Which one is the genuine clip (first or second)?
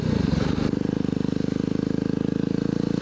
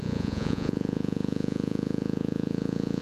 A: first